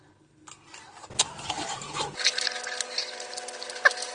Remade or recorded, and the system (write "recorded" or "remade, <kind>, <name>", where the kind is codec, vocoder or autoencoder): recorded